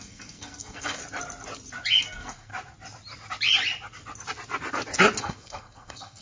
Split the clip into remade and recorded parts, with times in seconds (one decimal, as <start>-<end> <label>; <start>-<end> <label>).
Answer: 0.0-1.0 remade; 1.0-2.0 recorded; 2.0-2.5 remade; 2.5-5.2 recorded; 5.2-6.2 remade